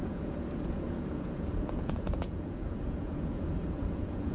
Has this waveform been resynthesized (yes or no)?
yes